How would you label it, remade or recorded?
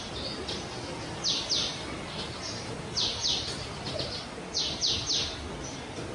recorded